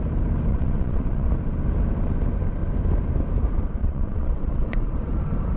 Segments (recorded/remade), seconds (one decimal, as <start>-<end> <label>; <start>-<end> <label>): 0.0-0.5 recorded; 0.5-1.3 remade; 1.3-3.8 recorded; 3.8-4.9 remade; 4.9-5.6 recorded